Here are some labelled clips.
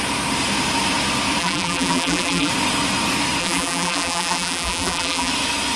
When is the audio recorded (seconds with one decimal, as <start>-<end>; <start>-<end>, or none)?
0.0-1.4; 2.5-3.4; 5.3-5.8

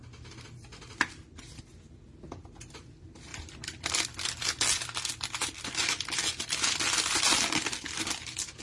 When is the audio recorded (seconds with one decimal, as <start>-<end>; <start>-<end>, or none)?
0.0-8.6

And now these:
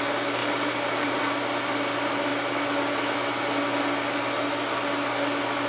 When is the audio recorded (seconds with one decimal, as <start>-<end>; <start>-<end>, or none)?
0.0-0.4; 1.2-5.7

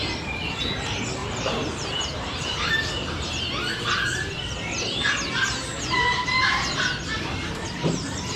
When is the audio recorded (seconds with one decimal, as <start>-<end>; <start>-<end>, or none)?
0.0-1.2; 2.9-8.4

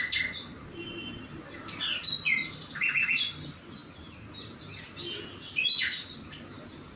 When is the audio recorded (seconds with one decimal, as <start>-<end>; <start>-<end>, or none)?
0.0-7.0

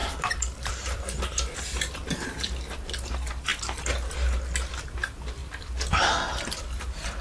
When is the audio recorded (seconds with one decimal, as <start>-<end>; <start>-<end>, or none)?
1.0-5.4; 6.6-7.2